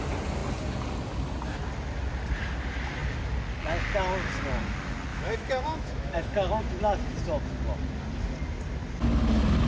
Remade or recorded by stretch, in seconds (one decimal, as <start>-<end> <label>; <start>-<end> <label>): 0.0-5.1 recorded; 5.1-6.6 remade; 6.6-9.7 recorded